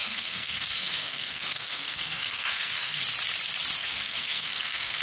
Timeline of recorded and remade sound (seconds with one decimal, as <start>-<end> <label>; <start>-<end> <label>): 0.0-3.0 remade; 3.0-3.8 recorded; 3.8-5.0 remade